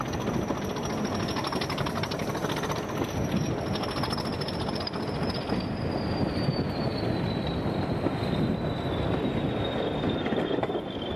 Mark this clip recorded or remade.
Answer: recorded